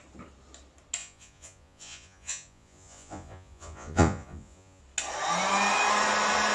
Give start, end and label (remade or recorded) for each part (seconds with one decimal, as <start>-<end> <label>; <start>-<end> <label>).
0.0-1.0 recorded; 1.0-4.8 remade; 4.8-6.5 recorded